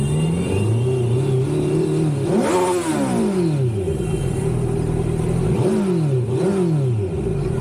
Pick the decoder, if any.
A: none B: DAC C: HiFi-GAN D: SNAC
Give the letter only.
A